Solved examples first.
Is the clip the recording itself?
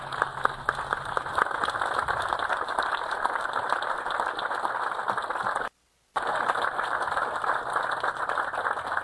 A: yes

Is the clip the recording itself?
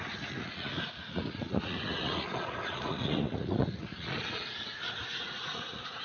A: no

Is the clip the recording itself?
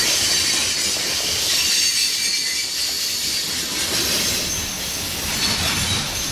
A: yes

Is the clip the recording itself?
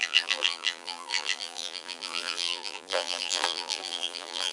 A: no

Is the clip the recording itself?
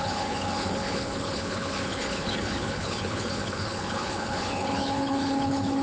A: no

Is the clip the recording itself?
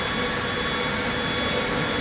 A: yes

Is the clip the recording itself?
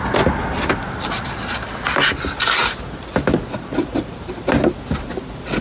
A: yes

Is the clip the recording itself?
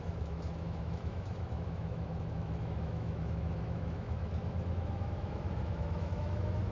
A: no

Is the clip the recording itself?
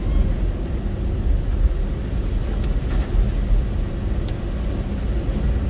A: yes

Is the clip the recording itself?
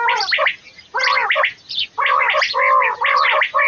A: yes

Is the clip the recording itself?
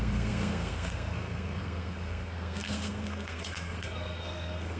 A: no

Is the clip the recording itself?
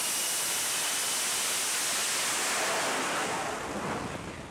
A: yes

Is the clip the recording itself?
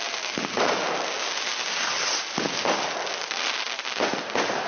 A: yes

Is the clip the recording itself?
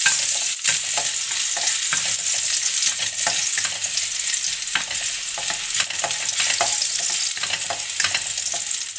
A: yes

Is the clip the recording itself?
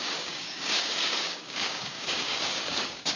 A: no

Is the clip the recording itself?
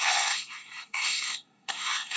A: no